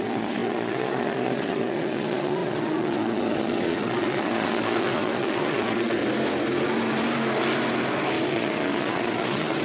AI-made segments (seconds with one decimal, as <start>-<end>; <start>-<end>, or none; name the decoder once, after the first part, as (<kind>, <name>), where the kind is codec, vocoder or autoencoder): 0.0-6.0 (vocoder, Vocos); 8.3-9.6

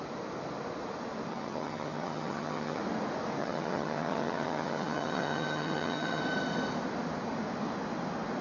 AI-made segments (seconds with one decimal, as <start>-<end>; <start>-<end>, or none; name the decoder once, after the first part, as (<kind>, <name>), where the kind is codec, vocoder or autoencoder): 1.3-2.8 (vocoder, HiFi-GAN); 3.4-6.2

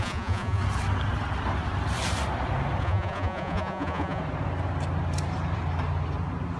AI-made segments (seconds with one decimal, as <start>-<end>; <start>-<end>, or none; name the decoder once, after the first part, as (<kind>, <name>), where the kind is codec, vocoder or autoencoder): 0.0-0.6 (vocoder, Vocos); 2.8-4.2

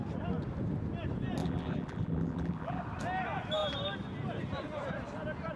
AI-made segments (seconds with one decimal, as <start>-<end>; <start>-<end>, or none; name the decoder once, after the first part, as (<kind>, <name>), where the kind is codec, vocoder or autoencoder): 1.4-2.8 (vocoder, BigVGAN v2)

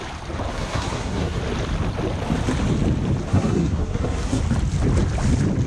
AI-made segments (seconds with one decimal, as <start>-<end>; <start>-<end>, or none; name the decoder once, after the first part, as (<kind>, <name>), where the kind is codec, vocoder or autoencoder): 0.5-1.4 (codec, SNAC); 3.3-4.4

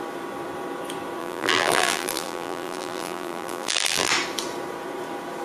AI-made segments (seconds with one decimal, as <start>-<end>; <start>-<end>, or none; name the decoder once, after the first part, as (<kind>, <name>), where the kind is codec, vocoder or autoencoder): 1.2-4.1 (vocoder, BigVGAN v2)

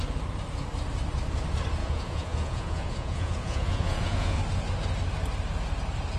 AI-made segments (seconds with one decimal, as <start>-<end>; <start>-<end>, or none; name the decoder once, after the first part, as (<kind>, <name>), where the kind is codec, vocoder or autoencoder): 1.8-4.4 (vocoder, Vocos)

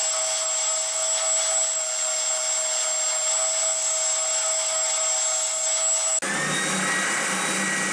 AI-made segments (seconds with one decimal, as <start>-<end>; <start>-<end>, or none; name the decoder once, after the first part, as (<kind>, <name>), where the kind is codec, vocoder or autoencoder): none